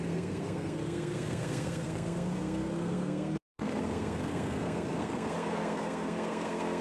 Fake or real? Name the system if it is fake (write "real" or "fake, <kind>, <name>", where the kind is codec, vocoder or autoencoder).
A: fake, codec, SNAC